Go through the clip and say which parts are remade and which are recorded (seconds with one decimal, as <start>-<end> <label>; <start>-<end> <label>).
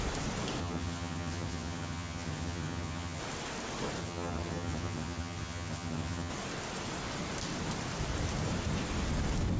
0.0-0.6 recorded; 0.6-3.2 remade; 3.2-4.0 recorded; 4.0-6.3 remade; 6.3-9.6 recorded